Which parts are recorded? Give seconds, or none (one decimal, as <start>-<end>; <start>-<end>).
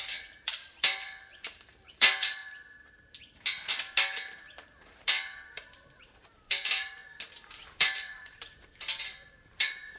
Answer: 2.4-4.3; 7.0-7.7